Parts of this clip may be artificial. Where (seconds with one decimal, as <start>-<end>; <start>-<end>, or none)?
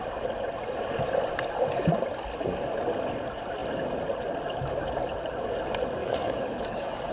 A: 6.0-7.1